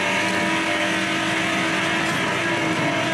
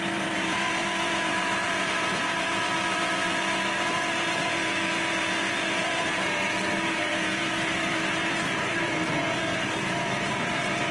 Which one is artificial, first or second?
second